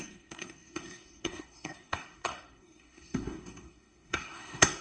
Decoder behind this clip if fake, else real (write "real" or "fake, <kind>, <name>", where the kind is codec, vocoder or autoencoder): fake, codec, SNAC